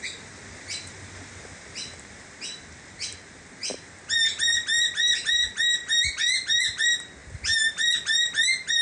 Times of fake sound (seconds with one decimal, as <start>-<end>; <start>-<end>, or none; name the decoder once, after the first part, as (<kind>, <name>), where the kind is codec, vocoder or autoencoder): none